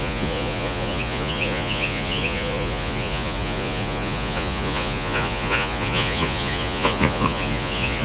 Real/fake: fake